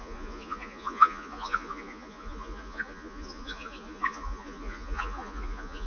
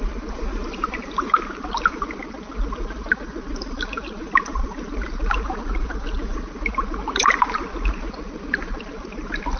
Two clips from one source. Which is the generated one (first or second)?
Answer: first